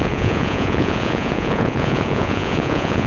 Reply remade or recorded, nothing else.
remade